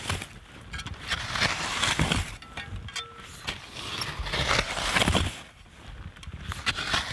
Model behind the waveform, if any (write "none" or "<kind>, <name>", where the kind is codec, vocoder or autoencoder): none